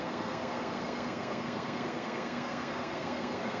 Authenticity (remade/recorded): remade